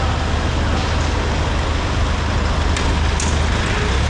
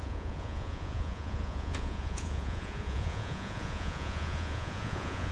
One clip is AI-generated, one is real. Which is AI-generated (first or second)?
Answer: second